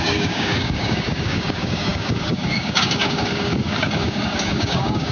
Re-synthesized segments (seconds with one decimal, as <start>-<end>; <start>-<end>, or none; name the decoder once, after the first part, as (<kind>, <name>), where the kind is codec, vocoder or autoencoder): 0.0-5.1 (codec, DAC)